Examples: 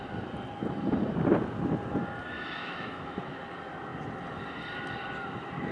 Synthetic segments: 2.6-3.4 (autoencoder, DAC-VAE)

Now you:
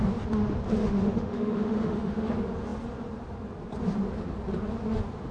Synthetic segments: 0.8-2.3 (autoencoder, DAC-VAE)